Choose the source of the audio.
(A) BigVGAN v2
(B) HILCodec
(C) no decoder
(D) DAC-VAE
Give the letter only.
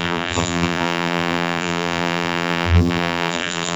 A